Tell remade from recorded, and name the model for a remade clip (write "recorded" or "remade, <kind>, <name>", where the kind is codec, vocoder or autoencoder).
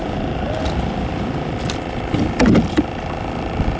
recorded